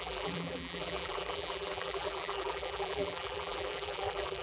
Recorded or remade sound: remade